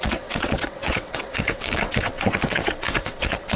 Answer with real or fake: fake